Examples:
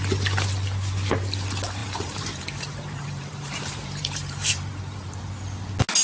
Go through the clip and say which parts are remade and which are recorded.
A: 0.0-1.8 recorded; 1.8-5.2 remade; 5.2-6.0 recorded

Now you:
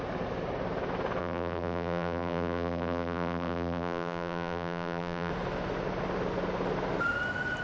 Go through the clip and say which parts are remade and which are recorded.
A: 0.0-1.2 recorded; 1.2-5.3 remade; 5.3-7.6 recorded

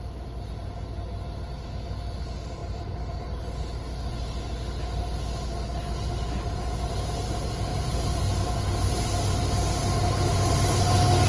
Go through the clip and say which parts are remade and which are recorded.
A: 0.0-2.6 recorded; 2.6-3.5 remade; 3.5-7.7 recorded; 7.7-8.2 remade; 8.2-11.3 recorded

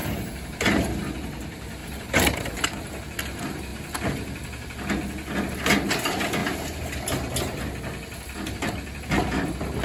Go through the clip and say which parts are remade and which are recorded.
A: 0.0-0.6 remade; 0.6-1.8 recorded; 1.8-2.4 remade; 2.4-9.8 recorded

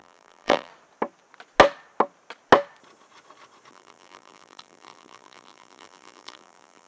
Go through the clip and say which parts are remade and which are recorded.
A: 0.0-0.7 remade; 0.7-3.7 recorded; 3.7-6.9 remade

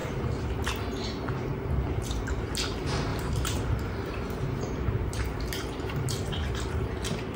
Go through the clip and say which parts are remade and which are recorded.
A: 0.0-0.6 remade; 0.6-1.5 recorded; 1.5-2.5 remade; 2.5-3.1 recorded; 3.1-6.7 remade; 6.7-7.4 recorded

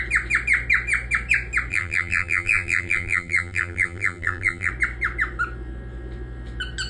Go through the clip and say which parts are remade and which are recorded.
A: 0.0-1.7 recorded; 1.7-4.7 remade; 4.7-6.9 recorded